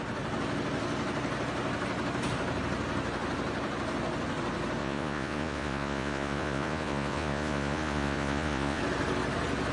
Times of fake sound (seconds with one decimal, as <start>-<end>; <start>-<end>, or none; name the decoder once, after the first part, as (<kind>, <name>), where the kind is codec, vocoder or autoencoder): 4.8-8.8 (vocoder, Vocos)